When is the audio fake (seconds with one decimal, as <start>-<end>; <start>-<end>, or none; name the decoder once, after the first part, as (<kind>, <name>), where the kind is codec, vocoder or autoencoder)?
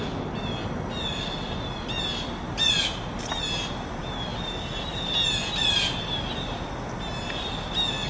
none